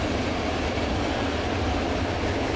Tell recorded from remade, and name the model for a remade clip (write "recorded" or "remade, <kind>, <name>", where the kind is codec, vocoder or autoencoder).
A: recorded